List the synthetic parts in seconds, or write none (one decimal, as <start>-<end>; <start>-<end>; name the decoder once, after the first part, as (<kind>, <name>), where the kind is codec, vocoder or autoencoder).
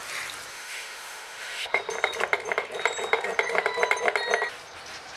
0.5-1.8 (autoencoder, DAC-VAE)